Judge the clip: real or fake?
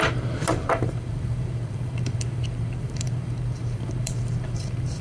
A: fake